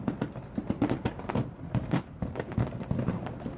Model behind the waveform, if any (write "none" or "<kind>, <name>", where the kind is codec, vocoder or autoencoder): none